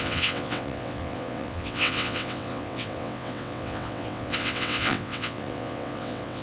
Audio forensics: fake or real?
fake